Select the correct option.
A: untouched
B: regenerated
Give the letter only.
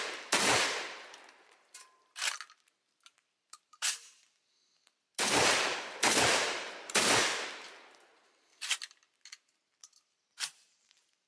B